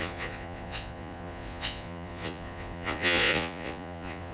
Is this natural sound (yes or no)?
no